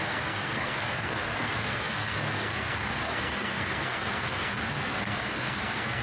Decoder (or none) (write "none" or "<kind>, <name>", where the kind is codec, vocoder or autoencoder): codec, SNAC